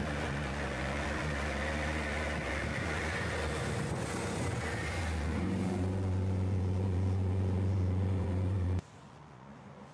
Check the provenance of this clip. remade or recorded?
remade